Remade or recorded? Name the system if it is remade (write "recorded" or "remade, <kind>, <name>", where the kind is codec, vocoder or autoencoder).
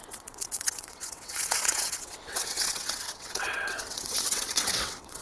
remade, vocoder, WaveNeXt